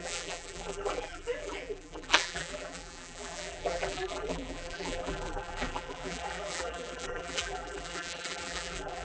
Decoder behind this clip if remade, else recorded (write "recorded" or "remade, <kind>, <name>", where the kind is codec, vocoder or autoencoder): remade, vocoder, BigVGAN v2